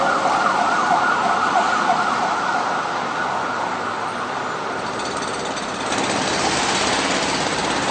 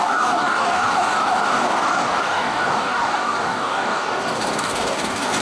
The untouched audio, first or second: first